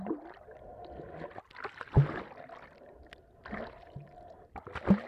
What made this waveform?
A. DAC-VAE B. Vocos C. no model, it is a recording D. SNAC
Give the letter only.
C